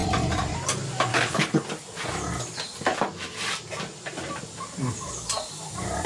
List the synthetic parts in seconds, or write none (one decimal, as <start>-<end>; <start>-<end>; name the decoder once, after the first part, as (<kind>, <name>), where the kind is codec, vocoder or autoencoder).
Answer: 1.1-1.6 (codec, HILCodec)